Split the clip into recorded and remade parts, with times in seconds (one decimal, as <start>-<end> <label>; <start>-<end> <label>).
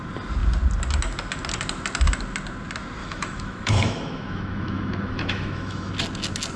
0.0-3.0 recorded; 3.0-5.9 remade; 5.9-6.6 recorded